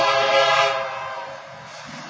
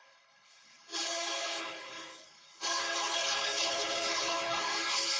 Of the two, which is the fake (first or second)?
second